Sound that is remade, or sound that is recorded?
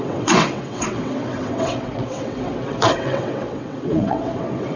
remade